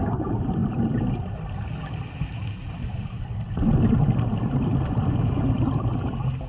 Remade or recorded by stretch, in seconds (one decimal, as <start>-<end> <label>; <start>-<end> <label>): 0.0-6.5 recorded